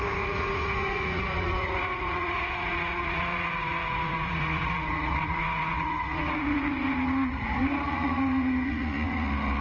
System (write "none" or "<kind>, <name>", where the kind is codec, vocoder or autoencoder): vocoder, Vocos